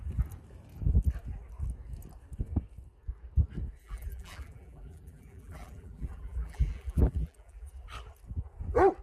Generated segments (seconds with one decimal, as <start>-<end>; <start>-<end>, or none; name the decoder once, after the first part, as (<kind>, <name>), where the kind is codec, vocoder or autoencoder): 3.8-7.7 (vocoder, BigVGAN v2)